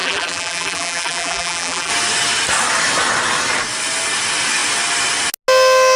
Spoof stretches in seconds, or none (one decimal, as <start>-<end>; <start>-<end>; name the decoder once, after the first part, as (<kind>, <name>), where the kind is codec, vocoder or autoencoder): 0.0-1.9 (vocoder, BigVGAN v2)